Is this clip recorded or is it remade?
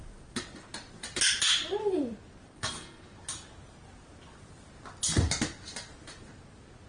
recorded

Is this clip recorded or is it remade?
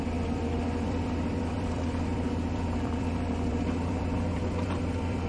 remade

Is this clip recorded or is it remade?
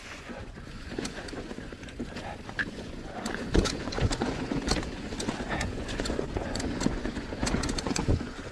remade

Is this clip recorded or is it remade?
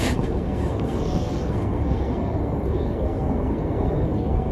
remade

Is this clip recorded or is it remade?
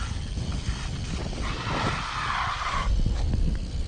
recorded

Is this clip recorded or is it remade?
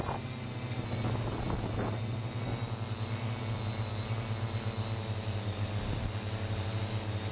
recorded